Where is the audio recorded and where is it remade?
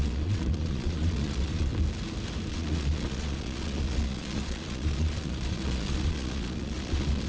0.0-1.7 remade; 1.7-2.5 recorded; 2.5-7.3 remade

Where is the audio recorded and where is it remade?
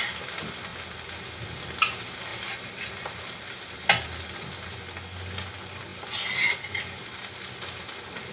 0.0-8.3 recorded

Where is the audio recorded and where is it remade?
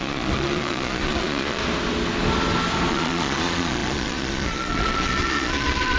0.0-1.6 remade; 1.6-2.9 recorded; 2.9-6.0 remade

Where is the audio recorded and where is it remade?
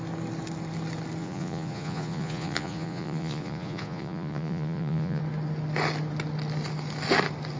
0.0-1.2 recorded; 1.2-5.2 remade; 5.2-7.6 recorded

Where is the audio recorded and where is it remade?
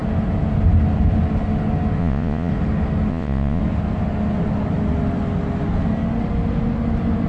0.0-2.0 recorded; 2.0-2.5 remade; 2.5-3.1 recorded; 3.1-3.6 remade; 3.6-7.3 recorded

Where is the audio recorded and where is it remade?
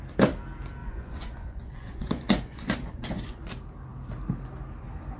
0.0-0.8 recorded; 0.8-3.5 remade; 3.5-5.2 recorded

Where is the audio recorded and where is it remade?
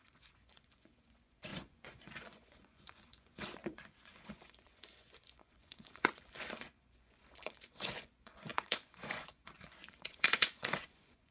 0.0-11.3 remade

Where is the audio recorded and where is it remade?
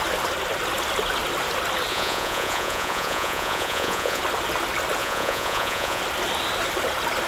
0.0-1.9 recorded; 1.9-4.2 remade; 4.2-5.0 recorded; 5.0-6.0 remade; 6.0-7.3 recorded